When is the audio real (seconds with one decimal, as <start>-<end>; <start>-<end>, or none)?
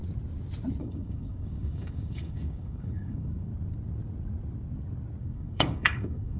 0.0-0.8; 3.5-5.2